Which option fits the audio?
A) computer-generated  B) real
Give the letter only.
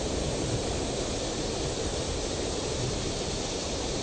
A